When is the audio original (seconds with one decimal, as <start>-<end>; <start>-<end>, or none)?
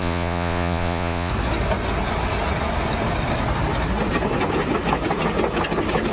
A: 1.3-6.1